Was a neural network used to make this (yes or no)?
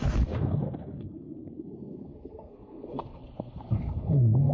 yes